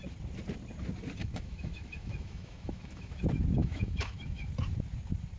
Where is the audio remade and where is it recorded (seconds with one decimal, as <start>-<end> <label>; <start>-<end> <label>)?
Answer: 0.0-1.2 recorded; 1.2-3.2 remade; 3.2-3.6 recorded; 3.6-4.5 remade; 4.5-5.4 recorded